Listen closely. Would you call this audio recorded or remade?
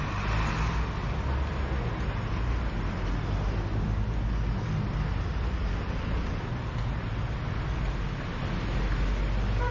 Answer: recorded